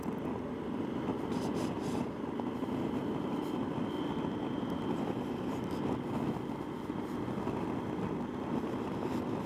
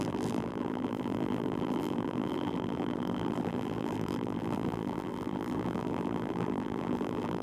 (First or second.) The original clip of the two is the first